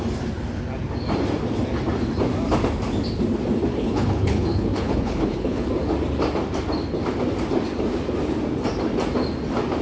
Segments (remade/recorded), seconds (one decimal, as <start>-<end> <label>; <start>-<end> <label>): 0.0-3.7 recorded; 3.7-5.7 remade; 5.7-9.8 recorded